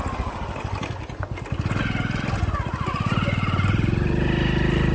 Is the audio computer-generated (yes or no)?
no